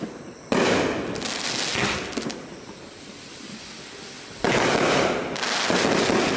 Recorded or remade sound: recorded